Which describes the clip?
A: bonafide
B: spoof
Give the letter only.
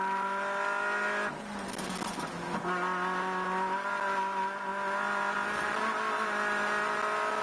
A